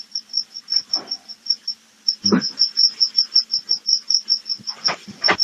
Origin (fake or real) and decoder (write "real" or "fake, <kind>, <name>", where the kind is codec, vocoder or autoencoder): real